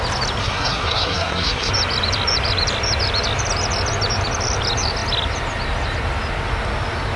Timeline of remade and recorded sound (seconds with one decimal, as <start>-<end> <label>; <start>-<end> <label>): 0.0-0.4 recorded; 0.4-1.7 remade; 1.7-7.2 recorded